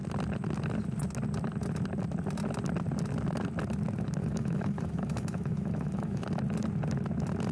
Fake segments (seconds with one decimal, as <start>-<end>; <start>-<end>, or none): 4.2-6.2